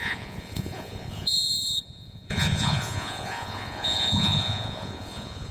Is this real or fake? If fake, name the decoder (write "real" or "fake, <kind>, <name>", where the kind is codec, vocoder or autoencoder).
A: fake, vocoder, Vocos